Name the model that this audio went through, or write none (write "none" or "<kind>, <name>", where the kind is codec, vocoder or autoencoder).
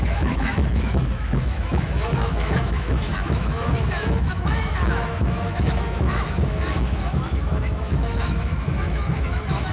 autoencoder, DAC-VAE